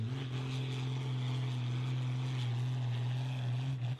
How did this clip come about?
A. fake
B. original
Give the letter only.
B